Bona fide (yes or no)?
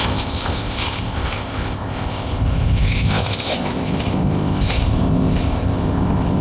no